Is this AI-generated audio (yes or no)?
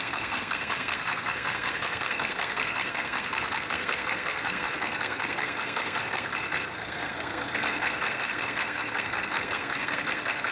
yes